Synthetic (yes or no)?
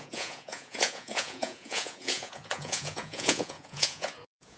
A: yes